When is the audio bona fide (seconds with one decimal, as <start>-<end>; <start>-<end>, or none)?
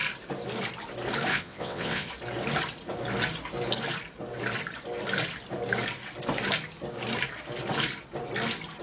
0.0-1.3; 2.1-8.8